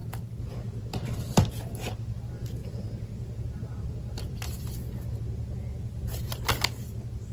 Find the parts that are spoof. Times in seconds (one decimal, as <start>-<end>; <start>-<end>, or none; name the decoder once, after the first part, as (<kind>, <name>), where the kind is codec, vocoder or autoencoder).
0.9-2.2 (vocoder, BigVGAN v2); 2.6-4.6